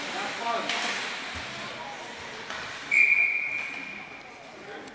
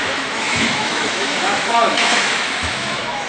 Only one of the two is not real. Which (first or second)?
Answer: second